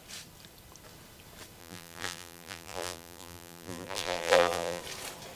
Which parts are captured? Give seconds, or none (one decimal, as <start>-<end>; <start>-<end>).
0.0-1.6; 4.8-5.4

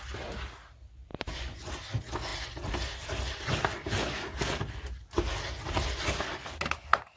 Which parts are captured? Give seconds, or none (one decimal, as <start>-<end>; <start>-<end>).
0.0-1.1; 1.7-7.2

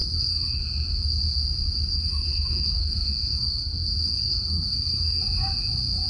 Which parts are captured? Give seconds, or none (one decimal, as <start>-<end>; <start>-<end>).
0.6-1.9; 5.2-6.1

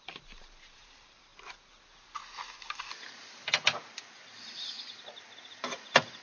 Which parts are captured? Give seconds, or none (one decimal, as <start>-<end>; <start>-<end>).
1.3-5.0

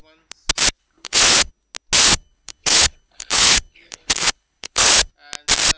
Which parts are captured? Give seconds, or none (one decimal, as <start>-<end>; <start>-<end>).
0.0-0.8; 1.5-2.0; 5.1-5.8

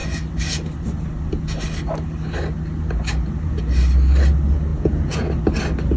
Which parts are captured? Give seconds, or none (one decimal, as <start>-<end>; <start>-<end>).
0.0-4.7; 5.3-6.0

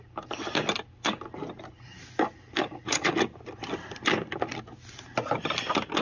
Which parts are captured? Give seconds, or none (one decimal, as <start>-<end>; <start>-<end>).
0.0-2.6; 3.1-6.0

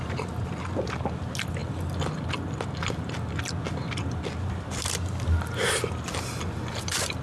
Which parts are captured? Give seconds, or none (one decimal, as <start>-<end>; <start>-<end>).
0.0-7.2